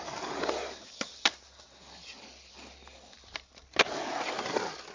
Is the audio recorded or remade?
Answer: recorded